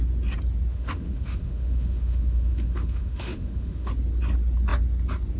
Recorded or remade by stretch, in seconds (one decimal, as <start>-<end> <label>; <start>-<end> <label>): 0.0-0.7 recorded; 0.7-3.9 remade; 3.9-5.4 recorded

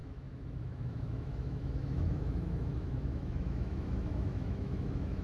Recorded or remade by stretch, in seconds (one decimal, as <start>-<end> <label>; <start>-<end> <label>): 0.0-5.2 remade